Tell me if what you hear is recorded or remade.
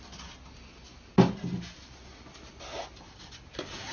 recorded